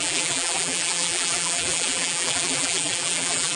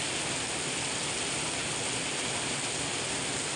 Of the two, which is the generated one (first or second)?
first